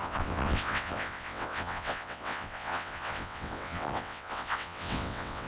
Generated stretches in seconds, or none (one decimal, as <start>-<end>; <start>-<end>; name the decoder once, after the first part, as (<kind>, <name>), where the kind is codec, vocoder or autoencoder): 0.0-5.5 (vocoder, WaveNeXt)